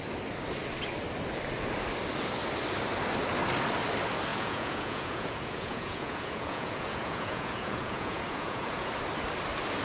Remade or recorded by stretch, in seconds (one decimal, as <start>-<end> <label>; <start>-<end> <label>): 0.0-4.3 recorded; 4.3-8.9 remade; 8.9-9.8 recorded